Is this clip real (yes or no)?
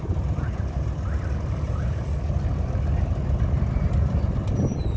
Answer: yes